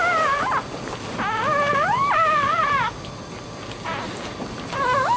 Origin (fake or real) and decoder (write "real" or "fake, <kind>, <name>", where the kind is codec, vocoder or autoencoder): real